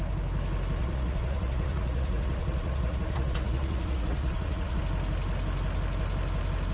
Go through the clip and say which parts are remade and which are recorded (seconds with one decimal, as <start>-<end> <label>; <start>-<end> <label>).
0.0-0.8 recorded; 0.8-4.8 remade; 4.8-6.7 recorded